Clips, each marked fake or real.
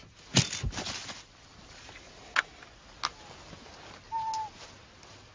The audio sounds real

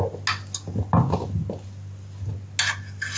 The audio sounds real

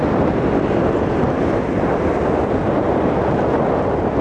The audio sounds real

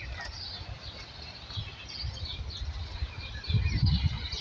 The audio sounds real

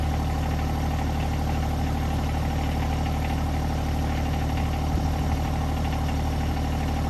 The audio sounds real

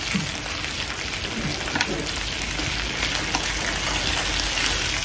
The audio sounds real